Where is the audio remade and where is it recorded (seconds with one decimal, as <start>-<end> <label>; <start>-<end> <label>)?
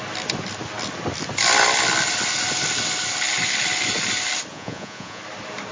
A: 0.0-4.5 recorded; 4.5-5.2 remade; 5.2-5.7 recorded